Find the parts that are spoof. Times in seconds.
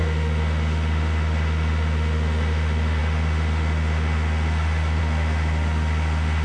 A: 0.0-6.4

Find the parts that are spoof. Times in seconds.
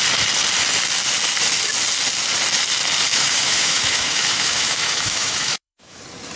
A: 3.1-6.0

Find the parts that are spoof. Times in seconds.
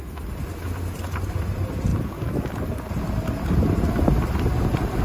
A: none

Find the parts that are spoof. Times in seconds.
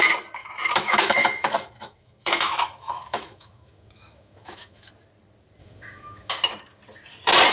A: 0.4-4.9; 5.6-6.3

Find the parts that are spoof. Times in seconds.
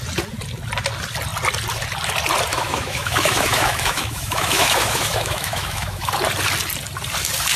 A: 2.5-6.1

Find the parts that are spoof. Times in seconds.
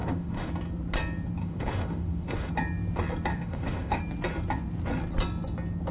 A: 0.0-0.5; 1.4-2.5; 3.3-4.0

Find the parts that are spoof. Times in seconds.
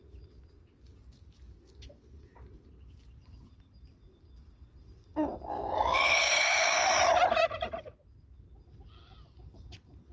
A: none